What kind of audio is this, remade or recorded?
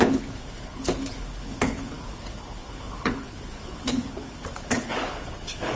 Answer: remade